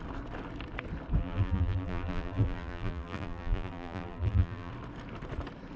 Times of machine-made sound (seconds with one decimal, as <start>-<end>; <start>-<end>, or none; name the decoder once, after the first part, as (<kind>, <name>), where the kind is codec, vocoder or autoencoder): 1.2-4.7 (vocoder, BigVGAN v2)